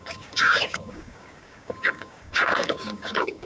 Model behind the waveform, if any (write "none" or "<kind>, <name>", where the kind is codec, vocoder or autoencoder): codec, DAC